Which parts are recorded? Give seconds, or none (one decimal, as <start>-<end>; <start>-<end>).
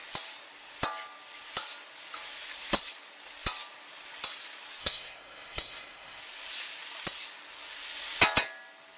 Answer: 0.0-4.8; 6.2-9.0